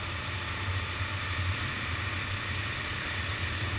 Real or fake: real